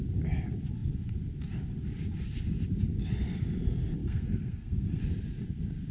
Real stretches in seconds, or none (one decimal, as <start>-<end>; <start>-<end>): 0.0-4.0; 5.0-5.9